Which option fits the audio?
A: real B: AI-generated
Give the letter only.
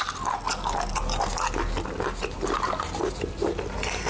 A